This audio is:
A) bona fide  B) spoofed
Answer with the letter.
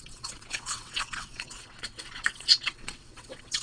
B